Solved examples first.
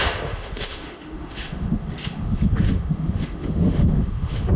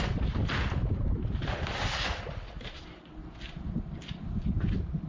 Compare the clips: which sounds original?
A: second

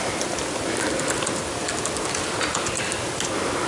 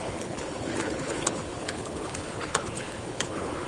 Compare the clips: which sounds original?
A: first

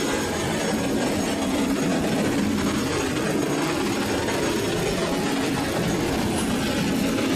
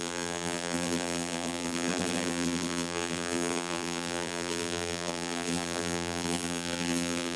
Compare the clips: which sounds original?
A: first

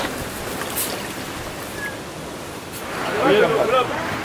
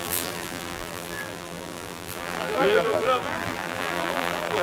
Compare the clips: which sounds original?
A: first